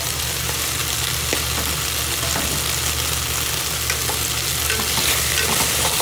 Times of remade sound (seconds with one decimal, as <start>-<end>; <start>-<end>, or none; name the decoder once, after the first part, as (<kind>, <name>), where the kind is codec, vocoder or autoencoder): none